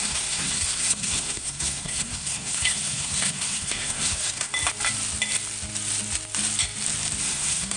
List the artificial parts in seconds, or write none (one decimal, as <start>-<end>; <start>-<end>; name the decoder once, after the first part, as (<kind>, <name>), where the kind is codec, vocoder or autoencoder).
0.0-4.5 (codec, SNAC); 7.2-7.8